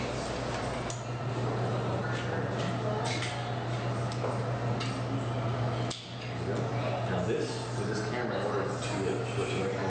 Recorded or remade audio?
recorded